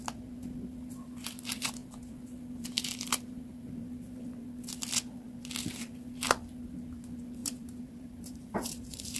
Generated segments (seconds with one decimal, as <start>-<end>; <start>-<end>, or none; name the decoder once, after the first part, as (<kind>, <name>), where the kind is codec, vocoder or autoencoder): 7.4-9.2 (vocoder, BigVGAN v2)